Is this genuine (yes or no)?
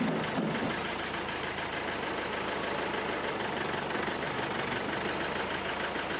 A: yes